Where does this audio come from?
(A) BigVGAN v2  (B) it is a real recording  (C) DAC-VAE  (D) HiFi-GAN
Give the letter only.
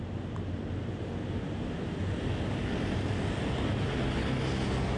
B